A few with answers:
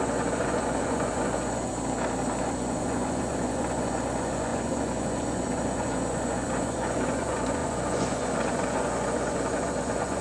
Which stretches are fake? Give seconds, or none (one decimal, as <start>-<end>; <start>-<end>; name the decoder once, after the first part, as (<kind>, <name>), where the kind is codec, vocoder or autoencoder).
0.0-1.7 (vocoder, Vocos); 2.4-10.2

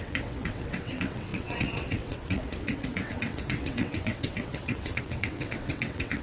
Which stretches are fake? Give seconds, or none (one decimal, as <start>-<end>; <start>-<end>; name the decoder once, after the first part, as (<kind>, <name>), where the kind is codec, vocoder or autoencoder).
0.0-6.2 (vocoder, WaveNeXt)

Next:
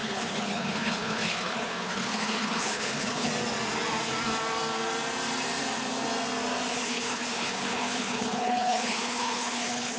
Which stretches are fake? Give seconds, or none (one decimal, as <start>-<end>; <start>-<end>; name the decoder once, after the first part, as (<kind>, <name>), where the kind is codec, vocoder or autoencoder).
0.0-3.3 (codec, HILCodec); 6.7-10.0

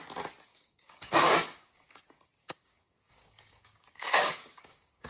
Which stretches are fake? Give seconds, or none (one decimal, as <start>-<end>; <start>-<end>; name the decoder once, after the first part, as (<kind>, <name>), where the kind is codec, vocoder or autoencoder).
0.5-2.0 (codec, DAC); 2.4-5.1

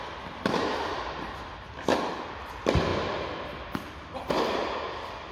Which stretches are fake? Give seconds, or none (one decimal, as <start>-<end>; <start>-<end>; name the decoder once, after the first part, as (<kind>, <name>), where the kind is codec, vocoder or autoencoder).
none

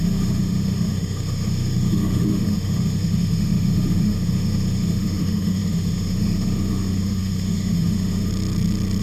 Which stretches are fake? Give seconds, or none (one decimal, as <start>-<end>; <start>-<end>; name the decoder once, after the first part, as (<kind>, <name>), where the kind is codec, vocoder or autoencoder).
0.0-8.3 (autoencoder, DAC-VAE)

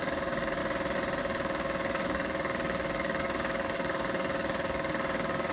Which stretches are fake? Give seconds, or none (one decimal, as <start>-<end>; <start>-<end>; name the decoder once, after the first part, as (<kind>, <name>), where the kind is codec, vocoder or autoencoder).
0.0-0.6 (codec, DAC); 1.2-5.5

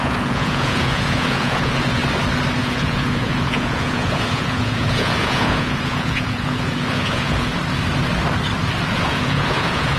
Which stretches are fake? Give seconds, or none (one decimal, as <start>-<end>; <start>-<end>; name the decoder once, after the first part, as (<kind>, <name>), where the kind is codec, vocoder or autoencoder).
0.0-2.0 (vocoder, Vocos); 2.6-7.5; 8.9-10.0